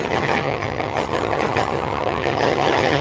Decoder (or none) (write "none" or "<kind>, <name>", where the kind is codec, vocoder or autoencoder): vocoder, HiFi-GAN